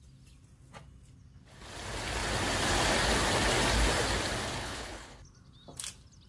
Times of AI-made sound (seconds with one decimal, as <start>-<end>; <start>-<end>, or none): 4.6-5.2